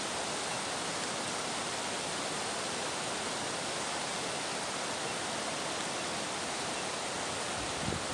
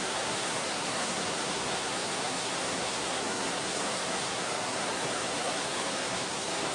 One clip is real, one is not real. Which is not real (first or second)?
second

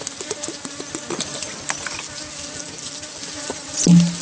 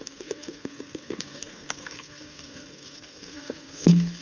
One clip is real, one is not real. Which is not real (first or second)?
second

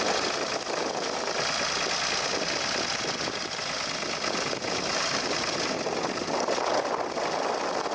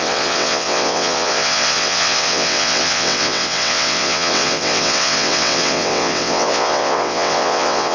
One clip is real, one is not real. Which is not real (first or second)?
second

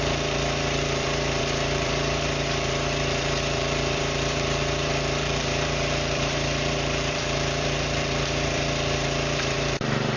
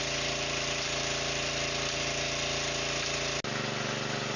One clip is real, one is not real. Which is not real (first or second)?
first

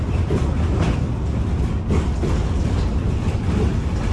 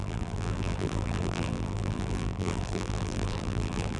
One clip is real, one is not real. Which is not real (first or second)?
second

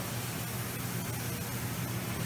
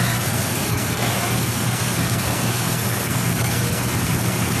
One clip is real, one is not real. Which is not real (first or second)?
second